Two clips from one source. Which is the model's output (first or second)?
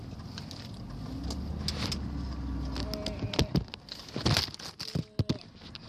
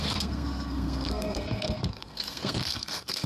second